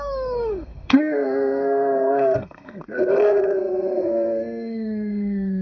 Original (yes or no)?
no